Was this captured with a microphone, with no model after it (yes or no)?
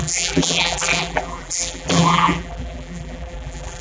no